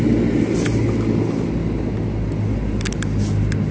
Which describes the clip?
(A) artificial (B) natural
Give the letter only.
B